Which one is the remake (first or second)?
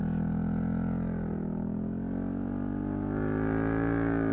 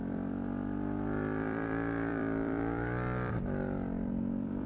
second